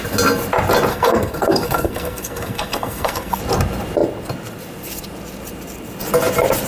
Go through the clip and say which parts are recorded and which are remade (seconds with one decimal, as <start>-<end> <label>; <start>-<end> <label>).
0.0-0.9 recorded; 0.9-3.4 remade; 3.4-6.7 recorded